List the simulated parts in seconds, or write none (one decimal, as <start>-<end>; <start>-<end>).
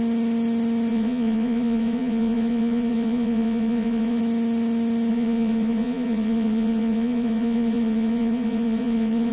0.9-4.2; 5.1-9.3